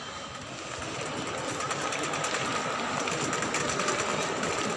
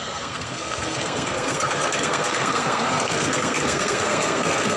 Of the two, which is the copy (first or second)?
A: second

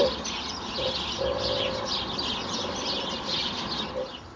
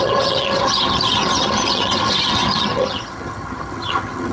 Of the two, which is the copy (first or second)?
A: second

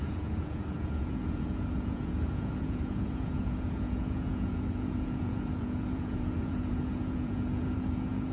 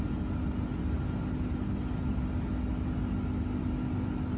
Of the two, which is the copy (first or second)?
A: first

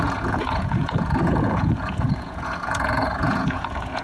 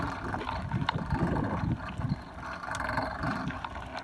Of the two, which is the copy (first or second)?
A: first